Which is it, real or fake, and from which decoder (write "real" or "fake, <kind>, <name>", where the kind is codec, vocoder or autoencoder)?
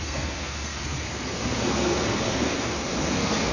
fake, codec, SNAC